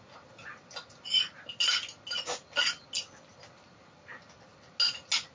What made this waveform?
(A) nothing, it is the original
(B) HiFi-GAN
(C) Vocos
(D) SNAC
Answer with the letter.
A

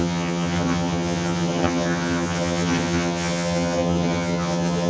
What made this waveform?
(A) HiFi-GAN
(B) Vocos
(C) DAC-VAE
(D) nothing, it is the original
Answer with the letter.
A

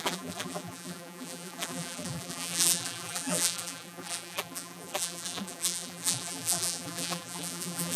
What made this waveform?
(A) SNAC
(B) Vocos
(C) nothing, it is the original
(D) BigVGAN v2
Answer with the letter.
D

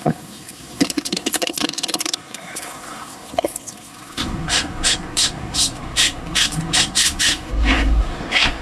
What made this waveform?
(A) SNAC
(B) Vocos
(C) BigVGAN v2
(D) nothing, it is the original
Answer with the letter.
A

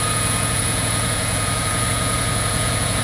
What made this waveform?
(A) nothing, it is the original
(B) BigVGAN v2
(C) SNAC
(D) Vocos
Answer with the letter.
D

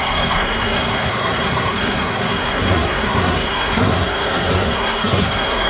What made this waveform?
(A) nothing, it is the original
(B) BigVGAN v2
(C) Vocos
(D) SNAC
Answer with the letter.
D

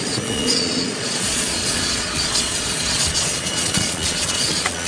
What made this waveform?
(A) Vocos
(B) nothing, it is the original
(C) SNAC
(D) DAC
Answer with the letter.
A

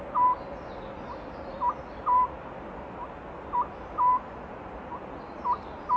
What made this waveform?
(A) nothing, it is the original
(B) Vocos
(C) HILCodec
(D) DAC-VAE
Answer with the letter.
A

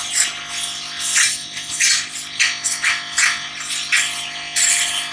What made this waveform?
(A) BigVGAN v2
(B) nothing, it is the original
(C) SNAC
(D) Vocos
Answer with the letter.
B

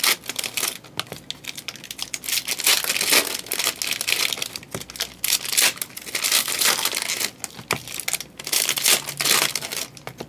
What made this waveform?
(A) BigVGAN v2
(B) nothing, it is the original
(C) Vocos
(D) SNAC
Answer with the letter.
B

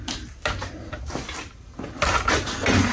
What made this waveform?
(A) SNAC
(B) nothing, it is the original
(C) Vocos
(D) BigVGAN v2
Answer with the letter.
B